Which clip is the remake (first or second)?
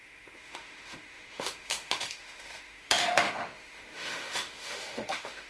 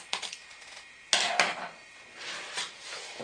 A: first